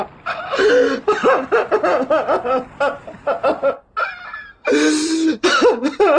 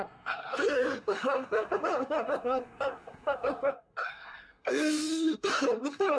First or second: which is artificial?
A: second